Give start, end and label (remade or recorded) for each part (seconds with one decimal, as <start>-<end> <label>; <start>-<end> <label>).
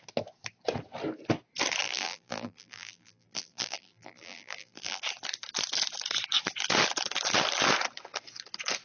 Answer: 0.0-1.8 recorded; 1.8-5.0 remade; 5.0-8.8 recorded